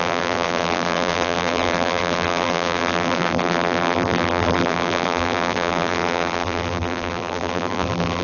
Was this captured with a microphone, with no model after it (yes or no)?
no